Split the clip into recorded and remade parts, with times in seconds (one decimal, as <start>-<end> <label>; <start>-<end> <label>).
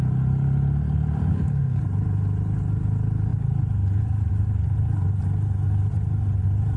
0.0-1.3 recorded; 1.3-1.8 remade; 1.8-6.8 recorded